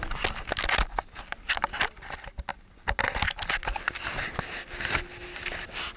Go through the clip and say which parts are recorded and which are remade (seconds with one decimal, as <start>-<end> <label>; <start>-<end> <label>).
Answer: 0.0-6.0 recorded